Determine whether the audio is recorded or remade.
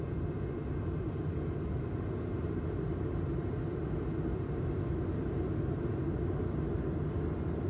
recorded